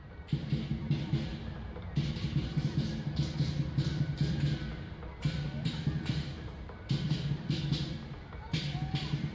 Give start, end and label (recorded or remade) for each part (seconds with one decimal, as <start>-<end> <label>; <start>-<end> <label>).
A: 0.0-1.3 remade; 1.3-2.1 recorded; 2.1-9.3 remade